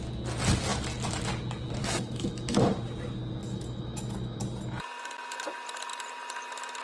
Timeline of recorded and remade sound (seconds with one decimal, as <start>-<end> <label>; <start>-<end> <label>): 0.0-1.8 recorded; 1.8-2.6 remade; 2.6-3.4 recorded; 3.4-4.4 remade; 4.4-6.8 recorded

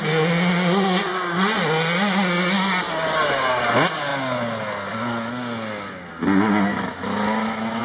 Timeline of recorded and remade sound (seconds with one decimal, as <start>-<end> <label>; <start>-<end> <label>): 0.0-6.7 recorded; 6.7-7.8 remade

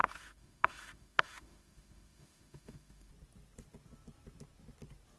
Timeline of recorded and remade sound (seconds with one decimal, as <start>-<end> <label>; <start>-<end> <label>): 0.0-3.1 remade; 3.1-5.2 recorded

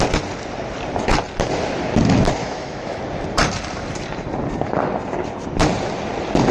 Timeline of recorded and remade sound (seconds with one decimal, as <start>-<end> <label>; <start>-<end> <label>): 0.0-2.4 recorded; 2.4-3.0 remade; 3.0-6.5 recorded

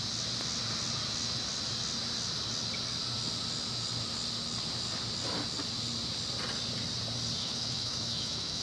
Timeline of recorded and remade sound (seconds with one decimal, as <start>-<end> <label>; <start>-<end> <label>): 0.0-7.4 recorded; 7.4-8.6 remade

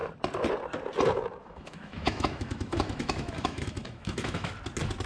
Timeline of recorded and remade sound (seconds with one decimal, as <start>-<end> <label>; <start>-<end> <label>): 0.0-1.4 recorded; 1.4-4.5 remade; 4.5-5.1 recorded

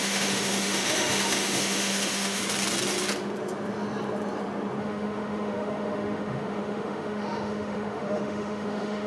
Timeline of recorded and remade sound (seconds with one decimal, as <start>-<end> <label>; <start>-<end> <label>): 0.0-2.4 remade; 2.4-4.8 recorded; 4.8-9.1 remade